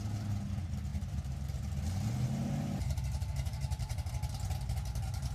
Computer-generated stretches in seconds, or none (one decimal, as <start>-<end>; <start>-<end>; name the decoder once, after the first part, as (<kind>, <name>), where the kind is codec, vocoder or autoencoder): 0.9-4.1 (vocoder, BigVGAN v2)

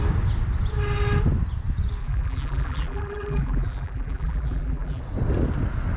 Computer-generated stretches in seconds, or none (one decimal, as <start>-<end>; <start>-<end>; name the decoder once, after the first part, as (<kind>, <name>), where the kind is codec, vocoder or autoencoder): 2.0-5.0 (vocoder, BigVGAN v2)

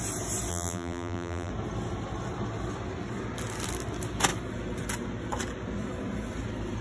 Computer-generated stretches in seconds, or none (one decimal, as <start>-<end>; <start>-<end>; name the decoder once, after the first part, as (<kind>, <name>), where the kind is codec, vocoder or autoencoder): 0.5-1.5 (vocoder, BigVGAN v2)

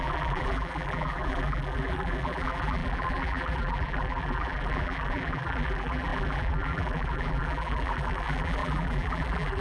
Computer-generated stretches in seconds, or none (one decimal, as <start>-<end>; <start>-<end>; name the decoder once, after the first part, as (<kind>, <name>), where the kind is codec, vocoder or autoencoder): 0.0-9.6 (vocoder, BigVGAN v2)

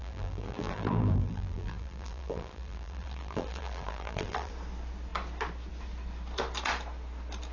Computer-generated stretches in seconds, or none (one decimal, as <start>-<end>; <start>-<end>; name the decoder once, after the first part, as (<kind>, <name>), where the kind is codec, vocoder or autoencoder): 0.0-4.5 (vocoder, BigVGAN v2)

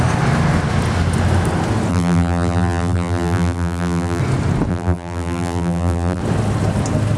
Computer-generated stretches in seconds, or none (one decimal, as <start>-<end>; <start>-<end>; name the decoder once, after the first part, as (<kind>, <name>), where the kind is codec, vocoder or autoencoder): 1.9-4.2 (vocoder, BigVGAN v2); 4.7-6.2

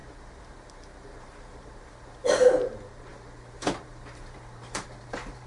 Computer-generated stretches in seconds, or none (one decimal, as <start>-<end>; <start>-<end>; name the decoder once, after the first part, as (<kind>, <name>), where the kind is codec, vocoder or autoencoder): 0.7-5.5 (vocoder, BigVGAN v2)